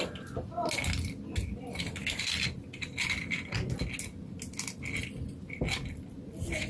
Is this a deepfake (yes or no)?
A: no